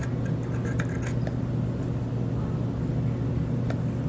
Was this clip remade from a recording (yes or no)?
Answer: no